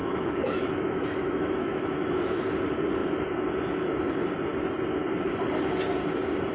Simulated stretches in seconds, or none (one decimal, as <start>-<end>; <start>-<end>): 0.0-2.4